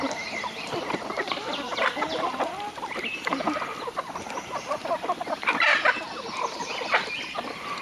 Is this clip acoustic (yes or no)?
no